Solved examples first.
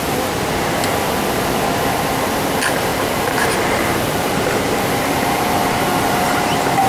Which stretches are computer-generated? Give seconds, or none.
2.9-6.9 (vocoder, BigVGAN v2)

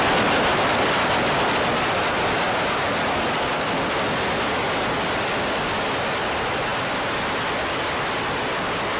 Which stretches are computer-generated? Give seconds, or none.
none